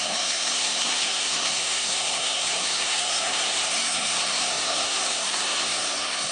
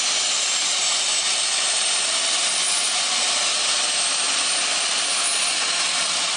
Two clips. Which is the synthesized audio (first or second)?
first